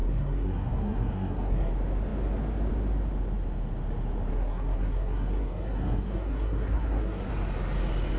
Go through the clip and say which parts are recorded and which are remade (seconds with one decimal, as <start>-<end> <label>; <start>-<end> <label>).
0.0-1.7 remade; 1.7-4.3 recorded; 4.3-7.3 remade; 7.3-8.2 recorded